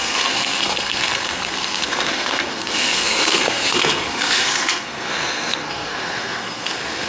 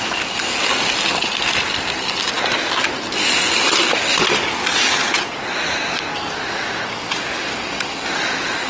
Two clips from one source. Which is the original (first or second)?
second